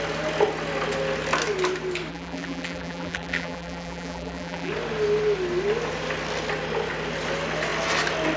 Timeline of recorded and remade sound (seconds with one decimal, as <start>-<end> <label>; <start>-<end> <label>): 0.0-2.1 recorded; 2.1-4.7 remade; 4.7-8.4 recorded